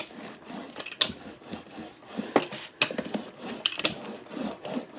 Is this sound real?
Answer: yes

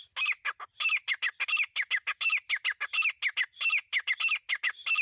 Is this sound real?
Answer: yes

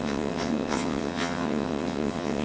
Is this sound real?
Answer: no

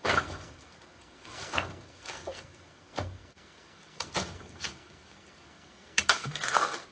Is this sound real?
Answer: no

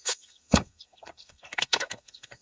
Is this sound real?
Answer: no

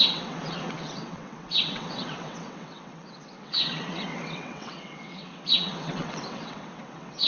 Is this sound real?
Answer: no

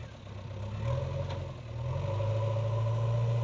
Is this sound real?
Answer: yes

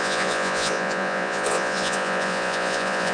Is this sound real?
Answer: no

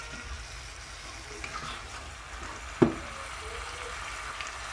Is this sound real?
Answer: yes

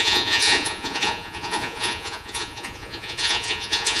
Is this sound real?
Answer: no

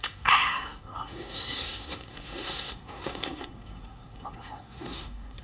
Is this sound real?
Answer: no